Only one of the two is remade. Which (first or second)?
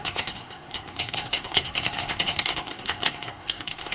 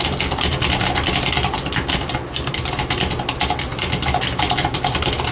first